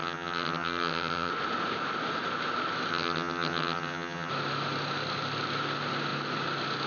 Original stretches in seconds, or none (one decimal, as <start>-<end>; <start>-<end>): 1.3-2.9; 4.3-6.9